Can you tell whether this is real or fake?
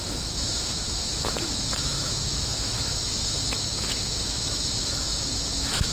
fake